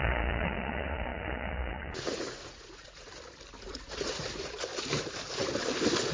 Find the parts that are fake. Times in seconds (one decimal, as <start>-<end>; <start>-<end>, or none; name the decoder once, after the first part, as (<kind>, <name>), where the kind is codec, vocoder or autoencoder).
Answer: 0.0-3.1 (vocoder, Vocos); 3.6-4.7